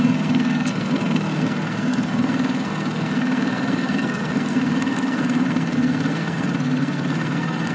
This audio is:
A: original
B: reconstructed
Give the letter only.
B